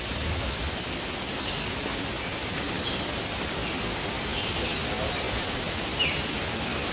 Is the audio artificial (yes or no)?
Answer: no